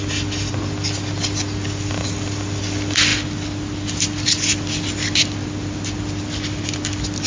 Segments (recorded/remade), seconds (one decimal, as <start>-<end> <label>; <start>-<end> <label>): 0.0-7.3 recorded